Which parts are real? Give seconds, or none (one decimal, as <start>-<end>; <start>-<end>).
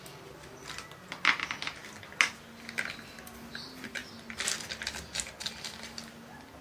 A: 0.0-6.6